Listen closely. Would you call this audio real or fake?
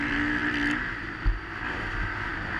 real